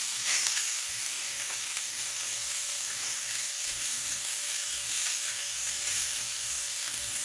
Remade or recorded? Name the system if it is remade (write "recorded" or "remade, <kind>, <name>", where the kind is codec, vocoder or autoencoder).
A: remade, codec, DAC